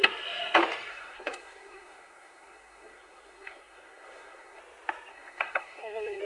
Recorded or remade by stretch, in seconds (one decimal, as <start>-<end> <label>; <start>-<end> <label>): 0.0-0.9 recorded; 0.9-4.6 remade; 4.6-5.1 recorded; 5.1-6.2 remade